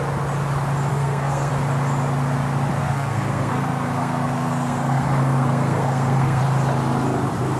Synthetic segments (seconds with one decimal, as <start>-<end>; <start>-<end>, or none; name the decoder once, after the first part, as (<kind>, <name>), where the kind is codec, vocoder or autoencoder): 0.9-1.5 (codec, SNAC); 2.8-6.4